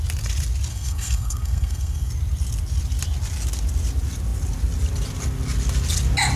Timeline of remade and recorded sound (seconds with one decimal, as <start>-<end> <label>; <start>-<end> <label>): 0.0-0.7 recorded; 0.7-2.1 remade; 2.1-6.4 recorded